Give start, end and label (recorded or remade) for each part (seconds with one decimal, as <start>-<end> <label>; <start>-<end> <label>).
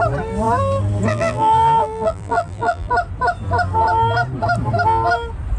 0.0-1.1 recorded; 1.1-2.9 remade; 2.9-5.6 recorded